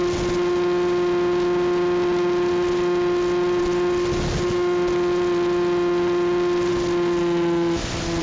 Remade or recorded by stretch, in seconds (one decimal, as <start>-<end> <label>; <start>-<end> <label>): 0.0-8.2 recorded